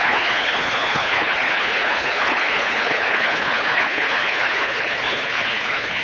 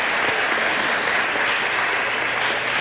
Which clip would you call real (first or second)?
second